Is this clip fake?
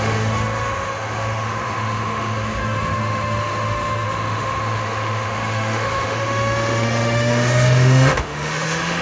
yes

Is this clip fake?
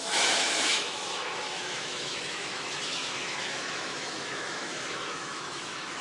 yes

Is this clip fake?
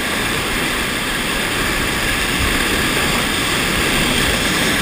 yes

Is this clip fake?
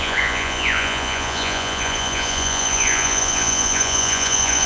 yes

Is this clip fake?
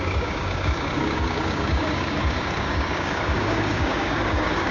yes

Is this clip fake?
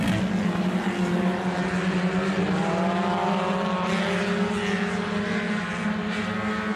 no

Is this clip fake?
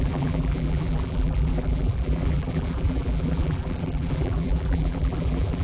yes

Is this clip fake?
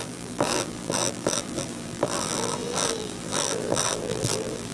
yes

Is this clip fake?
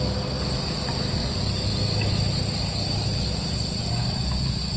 no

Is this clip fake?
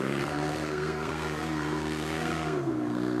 yes